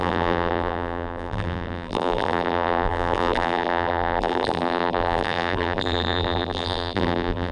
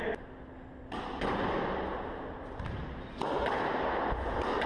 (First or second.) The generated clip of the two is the first